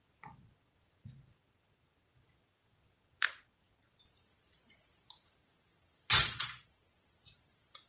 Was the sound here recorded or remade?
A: remade